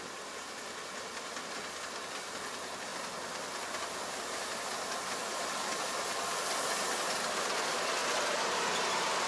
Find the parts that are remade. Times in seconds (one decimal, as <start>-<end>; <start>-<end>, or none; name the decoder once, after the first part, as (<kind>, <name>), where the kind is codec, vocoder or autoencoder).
none